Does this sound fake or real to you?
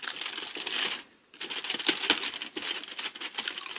real